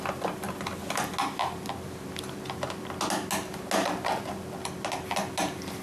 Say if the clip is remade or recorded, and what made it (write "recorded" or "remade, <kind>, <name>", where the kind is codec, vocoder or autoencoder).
recorded